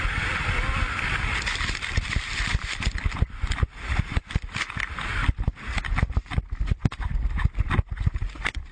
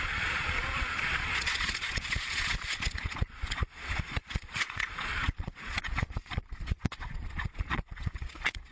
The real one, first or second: first